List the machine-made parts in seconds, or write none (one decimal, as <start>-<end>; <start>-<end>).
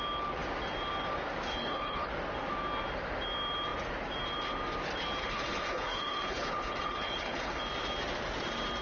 1.5-2.1; 5.2-7.6